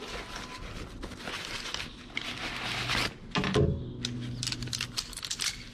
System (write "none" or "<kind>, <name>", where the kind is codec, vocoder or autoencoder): none